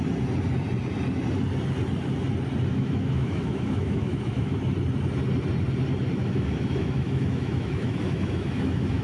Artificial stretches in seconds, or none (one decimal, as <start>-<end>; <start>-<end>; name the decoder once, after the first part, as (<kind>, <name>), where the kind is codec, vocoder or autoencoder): 2.7-4.6 (autoencoder, DAC-VAE); 6.2-9.0